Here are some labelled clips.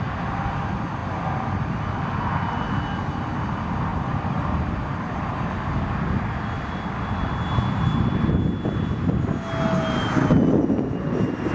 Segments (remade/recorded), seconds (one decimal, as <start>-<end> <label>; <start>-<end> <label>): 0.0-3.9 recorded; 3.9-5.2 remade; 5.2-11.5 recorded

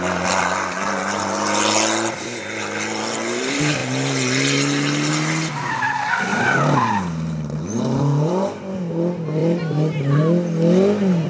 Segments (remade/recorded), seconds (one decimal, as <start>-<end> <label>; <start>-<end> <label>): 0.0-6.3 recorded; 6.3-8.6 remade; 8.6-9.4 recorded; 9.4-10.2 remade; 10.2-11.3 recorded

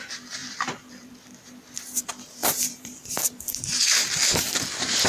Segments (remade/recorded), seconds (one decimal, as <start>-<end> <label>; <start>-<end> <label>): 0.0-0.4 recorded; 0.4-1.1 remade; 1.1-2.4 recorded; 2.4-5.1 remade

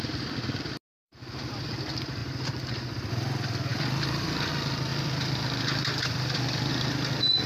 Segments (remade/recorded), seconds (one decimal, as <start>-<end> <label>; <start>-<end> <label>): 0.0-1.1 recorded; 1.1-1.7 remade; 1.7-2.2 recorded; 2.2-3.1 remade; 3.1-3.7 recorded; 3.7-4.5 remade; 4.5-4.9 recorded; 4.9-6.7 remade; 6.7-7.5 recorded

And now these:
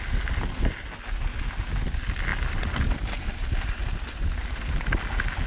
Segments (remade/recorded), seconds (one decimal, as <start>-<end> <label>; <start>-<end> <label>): 0.0-5.5 recorded

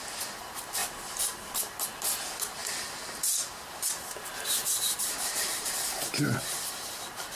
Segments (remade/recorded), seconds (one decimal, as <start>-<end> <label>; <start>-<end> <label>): 0.0-0.8 recorded; 0.8-1.6 remade; 1.6-4.6 recorded; 4.6-6.7 remade; 6.7-7.4 recorded

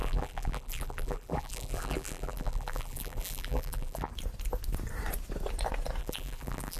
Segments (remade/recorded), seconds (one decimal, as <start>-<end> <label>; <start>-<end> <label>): 0.0-4.1 remade; 4.1-6.0 recorded; 6.0-6.8 remade

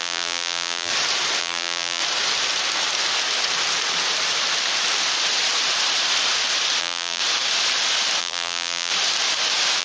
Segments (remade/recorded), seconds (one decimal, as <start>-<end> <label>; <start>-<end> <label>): 0.0-0.9 remade; 0.9-1.4 recorded; 1.4-2.0 remade; 2.0-6.8 recorded; 6.8-7.2 remade; 7.2-8.2 recorded; 8.2-8.9 remade; 8.9-9.8 recorded